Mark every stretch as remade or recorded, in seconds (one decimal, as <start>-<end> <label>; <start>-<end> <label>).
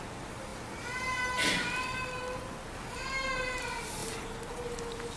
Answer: 0.0-5.2 recorded